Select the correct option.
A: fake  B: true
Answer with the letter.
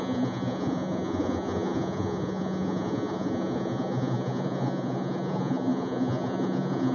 A